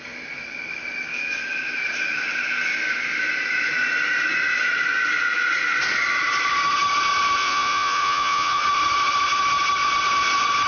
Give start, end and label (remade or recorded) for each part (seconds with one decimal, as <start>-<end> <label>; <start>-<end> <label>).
0.0-7.4 recorded; 7.4-8.6 remade; 8.6-10.7 recorded